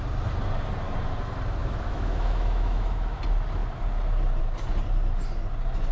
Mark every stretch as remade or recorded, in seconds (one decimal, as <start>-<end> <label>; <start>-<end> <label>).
0.0-1.6 recorded; 1.6-3.2 remade; 3.2-5.9 recorded